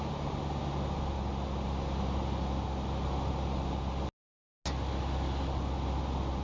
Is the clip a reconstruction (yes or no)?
no